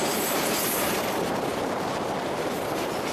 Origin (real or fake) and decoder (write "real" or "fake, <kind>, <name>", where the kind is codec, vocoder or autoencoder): real